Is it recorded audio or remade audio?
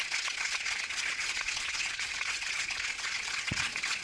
remade